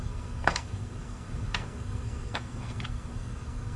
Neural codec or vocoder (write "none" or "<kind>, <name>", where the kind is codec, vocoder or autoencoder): codec, SNAC